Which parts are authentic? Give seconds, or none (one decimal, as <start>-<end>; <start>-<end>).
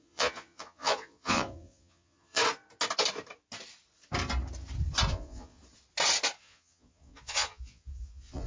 2.4-5.1; 5.6-6.4